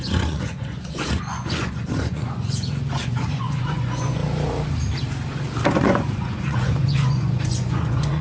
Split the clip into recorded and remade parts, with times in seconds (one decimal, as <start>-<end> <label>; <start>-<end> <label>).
0.0-4.2 remade; 4.2-5.7 recorded; 5.7-8.2 remade